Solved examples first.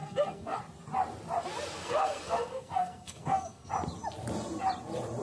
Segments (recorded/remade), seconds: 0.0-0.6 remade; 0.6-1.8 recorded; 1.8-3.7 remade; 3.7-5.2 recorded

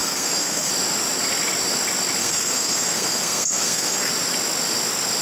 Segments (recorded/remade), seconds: 0.0-0.7 remade; 0.7-2.2 recorded; 2.2-4.1 remade; 4.1-5.2 recorded

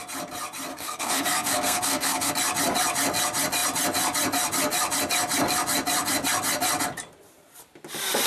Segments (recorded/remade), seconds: 0.0-0.7 recorded; 0.7-2.3 remade; 2.3-8.3 recorded